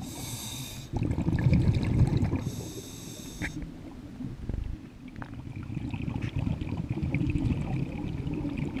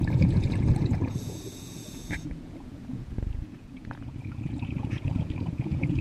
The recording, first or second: first